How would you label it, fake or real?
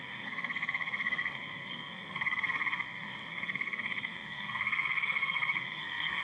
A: fake